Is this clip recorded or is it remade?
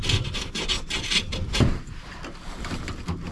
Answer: recorded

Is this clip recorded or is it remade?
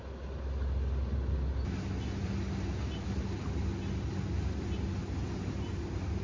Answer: recorded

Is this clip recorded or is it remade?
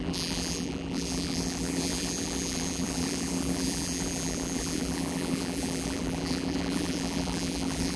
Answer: remade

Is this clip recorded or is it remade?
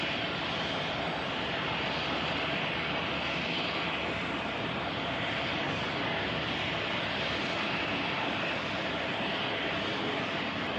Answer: recorded